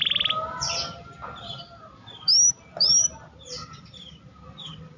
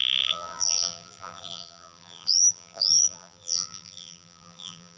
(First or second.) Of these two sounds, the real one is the first